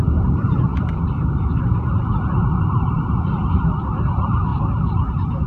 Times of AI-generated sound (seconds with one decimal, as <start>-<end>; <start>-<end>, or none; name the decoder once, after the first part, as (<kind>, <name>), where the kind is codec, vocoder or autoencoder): 0.0-5.5 (vocoder, BigVGAN v2)